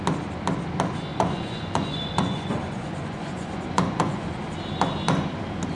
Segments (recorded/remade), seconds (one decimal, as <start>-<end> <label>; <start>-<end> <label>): 0.0-1.1 recorded; 1.1-4.4 remade; 4.4-5.7 recorded